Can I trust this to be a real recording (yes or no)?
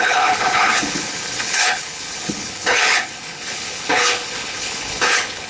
no